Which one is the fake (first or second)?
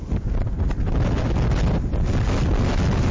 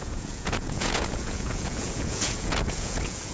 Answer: second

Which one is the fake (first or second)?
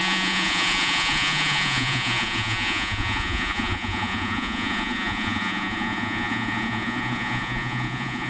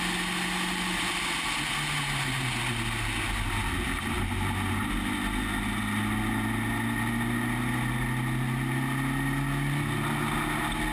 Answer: first